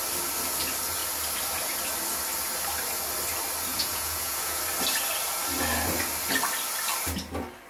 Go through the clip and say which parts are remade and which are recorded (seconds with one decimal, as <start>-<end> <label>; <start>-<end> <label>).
0.0-3.7 recorded; 3.7-4.6 remade; 4.6-7.7 recorded